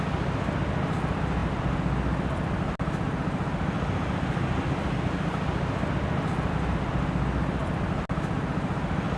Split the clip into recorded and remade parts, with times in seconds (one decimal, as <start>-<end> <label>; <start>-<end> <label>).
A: 0.0-9.2 recorded